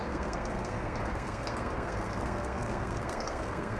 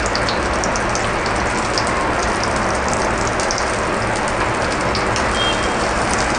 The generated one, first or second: first